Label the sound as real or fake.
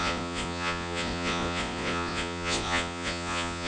fake